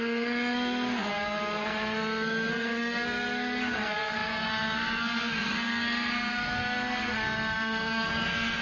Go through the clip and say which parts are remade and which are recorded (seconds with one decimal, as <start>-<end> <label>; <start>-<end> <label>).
0.0-8.6 remade